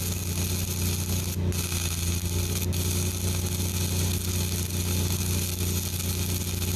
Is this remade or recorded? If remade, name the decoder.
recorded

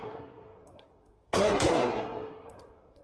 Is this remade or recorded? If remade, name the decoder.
remade, codec, SNAC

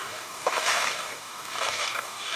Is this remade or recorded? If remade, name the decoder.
remade, codec, DAC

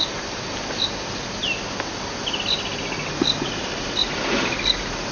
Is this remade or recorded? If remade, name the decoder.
recorded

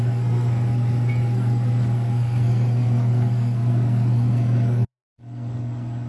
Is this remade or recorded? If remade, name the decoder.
remade, codec, SNAC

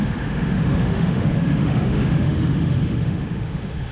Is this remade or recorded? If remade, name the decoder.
remade, autoencoder, DAC-VAE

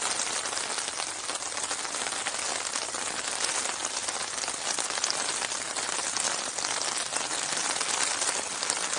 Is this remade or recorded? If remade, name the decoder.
recorded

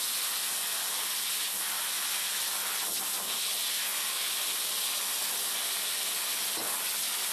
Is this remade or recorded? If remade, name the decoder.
recorded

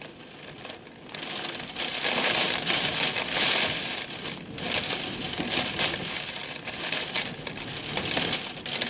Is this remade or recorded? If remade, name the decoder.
recorded